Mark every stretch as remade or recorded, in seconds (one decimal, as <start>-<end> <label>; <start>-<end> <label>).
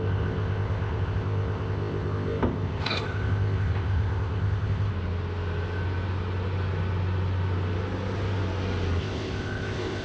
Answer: 0.0-4.9 remade; 4.9-9.0 recorded; 9.0-10.0 remade